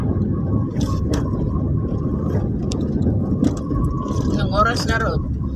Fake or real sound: fake